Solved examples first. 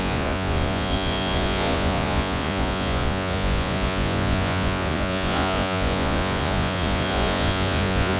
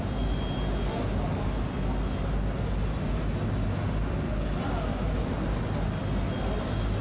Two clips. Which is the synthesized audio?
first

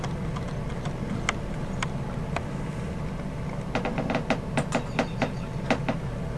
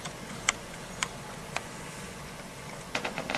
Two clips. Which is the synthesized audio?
second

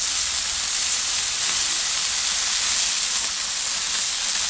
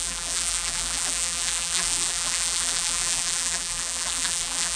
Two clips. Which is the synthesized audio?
second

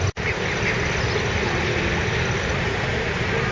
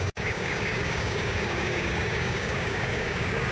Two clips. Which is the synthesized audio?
second